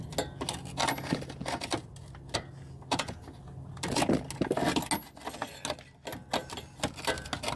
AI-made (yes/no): no